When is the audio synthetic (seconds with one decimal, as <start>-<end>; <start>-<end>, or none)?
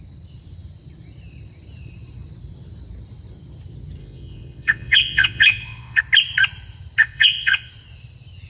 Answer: 4.0-6.0; 7.0-7.7